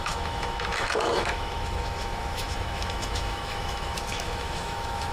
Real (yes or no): no